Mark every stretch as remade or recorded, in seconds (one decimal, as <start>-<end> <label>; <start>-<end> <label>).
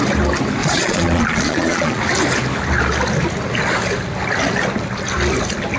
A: 0.0-0.6 recorded; 0.6-2.0 remade; 2.0-5.8 recorded